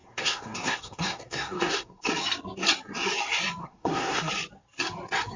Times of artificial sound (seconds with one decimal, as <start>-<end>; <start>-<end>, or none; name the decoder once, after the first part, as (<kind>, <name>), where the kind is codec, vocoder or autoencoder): 0.0-2.1 (codec, SNAC); 3.6-4.3